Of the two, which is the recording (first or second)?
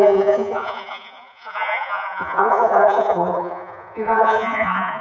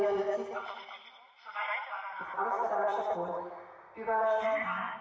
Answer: second